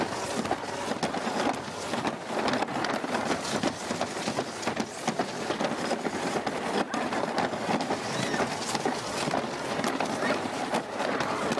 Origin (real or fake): real